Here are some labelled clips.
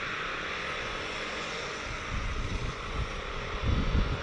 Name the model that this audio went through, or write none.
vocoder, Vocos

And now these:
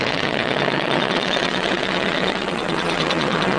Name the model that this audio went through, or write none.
vocoder, WaveNeXt